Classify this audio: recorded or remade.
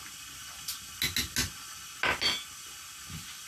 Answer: recorded